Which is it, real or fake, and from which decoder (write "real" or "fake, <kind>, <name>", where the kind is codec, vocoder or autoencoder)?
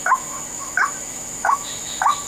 fake, autoencoder, DAC-VAE